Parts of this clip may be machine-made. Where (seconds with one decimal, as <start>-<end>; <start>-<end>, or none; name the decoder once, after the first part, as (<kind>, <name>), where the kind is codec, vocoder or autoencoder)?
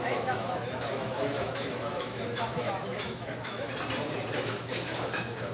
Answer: 0.0-3.7 (autoencoder, DAC-VAE); 4.4-5.5